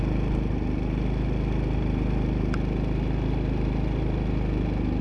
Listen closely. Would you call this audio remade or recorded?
recorded